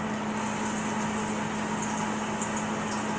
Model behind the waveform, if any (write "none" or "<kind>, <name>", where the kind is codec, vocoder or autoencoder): none